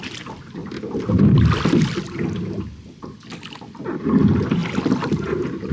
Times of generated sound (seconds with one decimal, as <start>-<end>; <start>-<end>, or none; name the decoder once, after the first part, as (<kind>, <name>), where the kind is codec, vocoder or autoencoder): 0.0-0.6 (vocoder, BigVGAN v2); 4.0-4.6